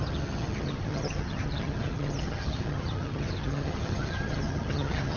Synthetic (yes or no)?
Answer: yes